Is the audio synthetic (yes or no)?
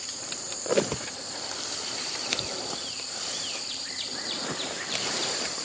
yes